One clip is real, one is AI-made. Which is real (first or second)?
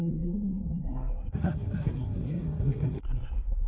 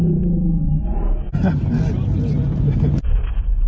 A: second